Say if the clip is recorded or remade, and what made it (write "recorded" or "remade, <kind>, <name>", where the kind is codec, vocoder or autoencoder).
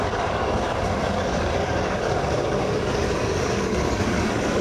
remade, codec, DAC